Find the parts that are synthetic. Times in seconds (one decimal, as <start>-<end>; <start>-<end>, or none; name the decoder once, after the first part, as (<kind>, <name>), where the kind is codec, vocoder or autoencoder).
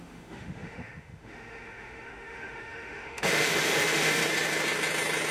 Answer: 0.0-4.2 (autoencoder, DAC-VAE)